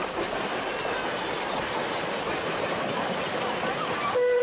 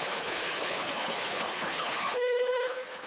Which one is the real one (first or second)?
first